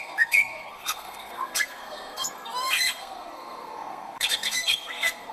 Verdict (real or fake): fake